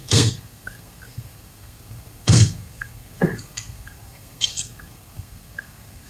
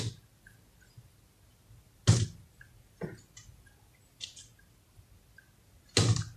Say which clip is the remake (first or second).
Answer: first